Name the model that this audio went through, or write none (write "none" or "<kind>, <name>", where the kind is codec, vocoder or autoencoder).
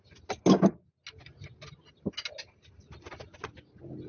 none